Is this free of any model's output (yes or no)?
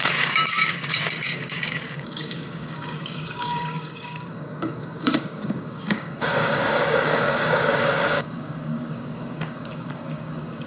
no